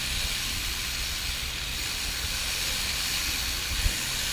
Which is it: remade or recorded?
recorded